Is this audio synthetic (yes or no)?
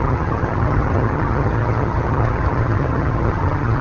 yes